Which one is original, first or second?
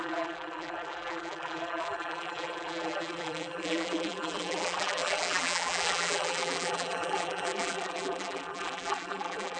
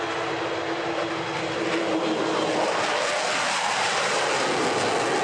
second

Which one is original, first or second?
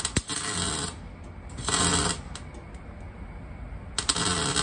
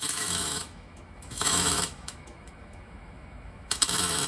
first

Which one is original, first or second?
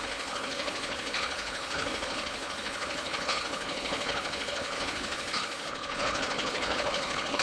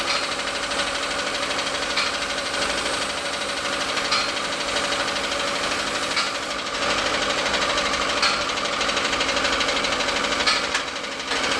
second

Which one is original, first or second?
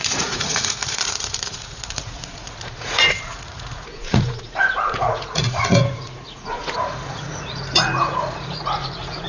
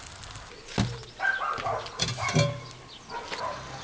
second